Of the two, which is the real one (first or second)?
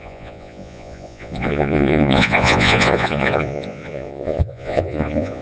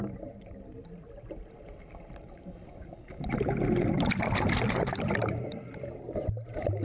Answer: second